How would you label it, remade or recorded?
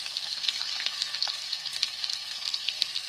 remade